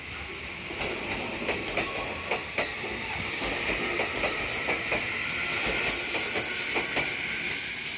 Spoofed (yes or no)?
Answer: no